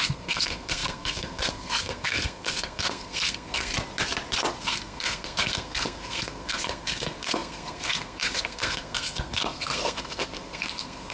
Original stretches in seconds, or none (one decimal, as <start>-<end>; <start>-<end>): 3.7-4.6